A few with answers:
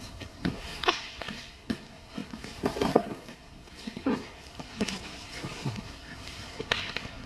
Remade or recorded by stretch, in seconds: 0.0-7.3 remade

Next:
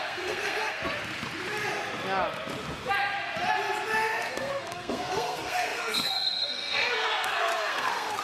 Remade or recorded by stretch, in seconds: 0.0-0.8 remade; 0.8-4.3 recorded; 4.3-8.2 remade

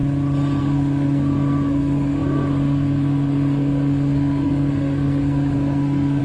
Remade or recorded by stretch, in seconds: 0.0-0.6 recorded; 0.6-6.2 remade

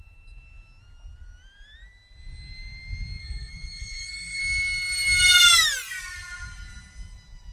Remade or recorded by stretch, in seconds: 0.0-3.2 recorded; 3.2-4.4 remade; 4.4-7.5 recorded

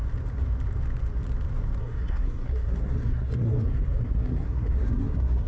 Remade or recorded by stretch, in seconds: 0.0-1.8 recorded; 1.8-5.5 remade

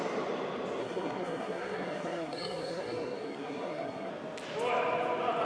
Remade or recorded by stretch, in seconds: 0.0-0.8 recorded; 0.8-4.1 remade; 4.1-5.5 recorded